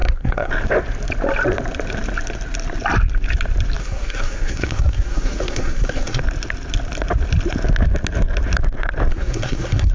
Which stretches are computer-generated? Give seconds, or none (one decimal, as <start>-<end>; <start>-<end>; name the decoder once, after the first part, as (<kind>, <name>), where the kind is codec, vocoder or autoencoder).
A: 0.0-0.5 (codec, SNAC); 3.8-6.2; 9.1-9.9